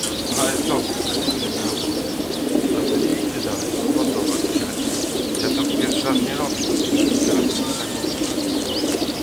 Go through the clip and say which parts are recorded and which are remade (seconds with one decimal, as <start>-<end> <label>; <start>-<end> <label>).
0.0-9.2 recorded